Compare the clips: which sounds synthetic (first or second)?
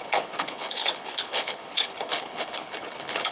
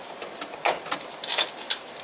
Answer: first